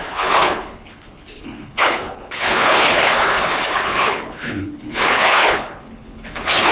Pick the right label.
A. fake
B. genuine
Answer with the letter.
A